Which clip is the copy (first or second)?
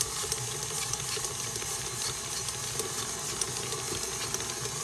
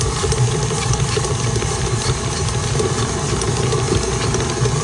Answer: second